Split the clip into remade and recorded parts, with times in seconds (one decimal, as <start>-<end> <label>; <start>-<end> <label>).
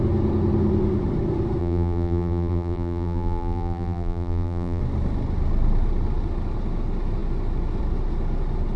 0.0-1.6 recorded; 1.6-4.8 remade; 4.8-8.8 recorded